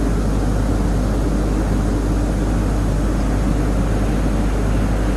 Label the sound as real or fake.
real